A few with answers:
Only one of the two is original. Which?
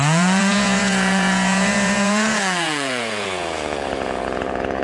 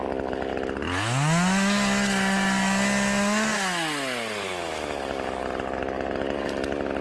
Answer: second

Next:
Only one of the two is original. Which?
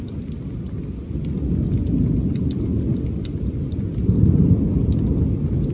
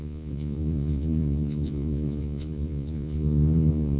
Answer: first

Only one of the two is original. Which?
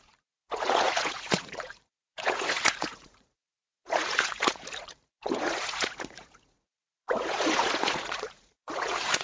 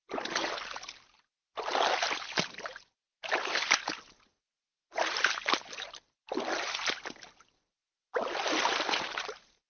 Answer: second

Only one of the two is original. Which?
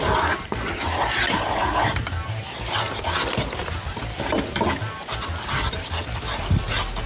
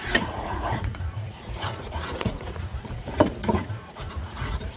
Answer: first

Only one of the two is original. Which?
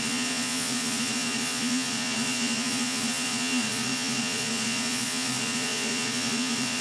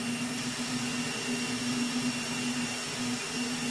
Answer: second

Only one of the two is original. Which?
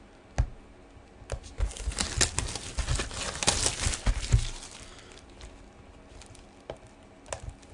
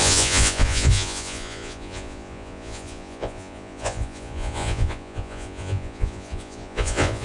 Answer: first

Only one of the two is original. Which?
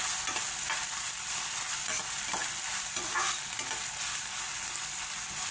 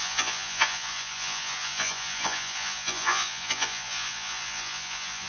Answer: first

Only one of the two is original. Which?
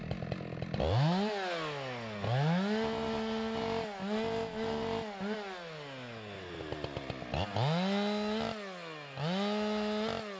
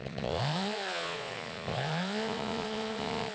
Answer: first